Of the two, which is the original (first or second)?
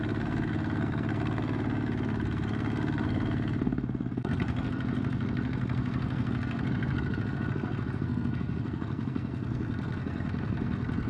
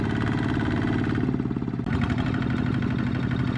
second